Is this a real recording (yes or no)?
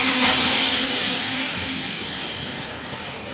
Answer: no